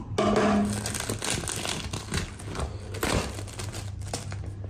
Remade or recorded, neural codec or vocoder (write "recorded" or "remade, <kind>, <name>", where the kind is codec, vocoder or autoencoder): recorded